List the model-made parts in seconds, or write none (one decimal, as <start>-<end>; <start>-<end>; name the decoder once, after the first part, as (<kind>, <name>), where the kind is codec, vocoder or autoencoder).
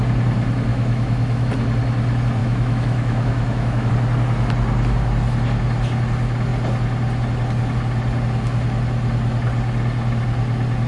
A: 0.7-1.5 (autoencoder, DAC-VAE); 2.4-3.9